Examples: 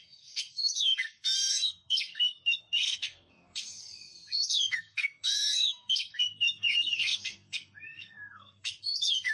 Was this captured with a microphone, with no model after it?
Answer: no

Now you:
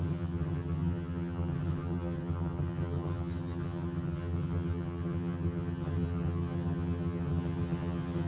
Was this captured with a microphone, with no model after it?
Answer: no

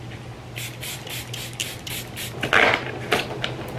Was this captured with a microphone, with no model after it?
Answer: yes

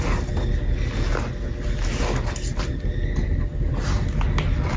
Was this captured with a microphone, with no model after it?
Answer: yes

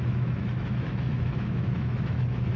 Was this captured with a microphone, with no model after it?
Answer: no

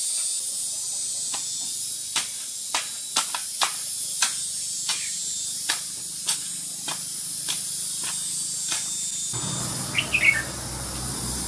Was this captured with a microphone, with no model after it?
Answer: yes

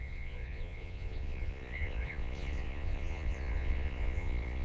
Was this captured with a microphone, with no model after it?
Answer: no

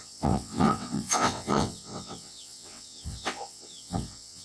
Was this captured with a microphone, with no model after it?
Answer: no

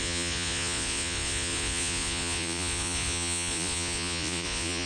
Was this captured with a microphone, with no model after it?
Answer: no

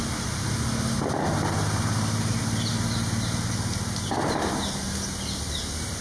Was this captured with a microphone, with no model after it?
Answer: yes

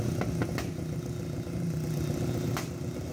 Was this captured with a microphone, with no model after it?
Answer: yes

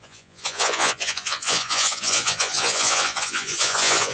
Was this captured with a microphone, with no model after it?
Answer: no